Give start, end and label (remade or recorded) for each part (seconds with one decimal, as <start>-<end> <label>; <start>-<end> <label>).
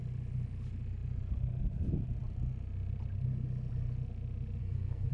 0.0-4.6 recorded; 4.6-5.1 remade